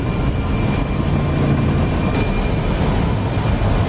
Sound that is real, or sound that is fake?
real